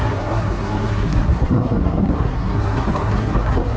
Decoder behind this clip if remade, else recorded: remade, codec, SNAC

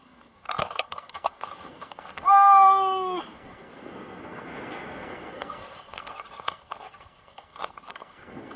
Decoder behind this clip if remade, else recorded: remade, codec, SNAC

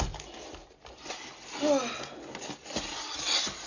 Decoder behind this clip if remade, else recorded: recorded